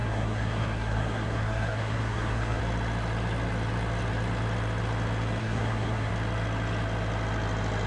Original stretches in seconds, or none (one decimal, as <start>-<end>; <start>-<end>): 2.6-5.4; 6.1-7.9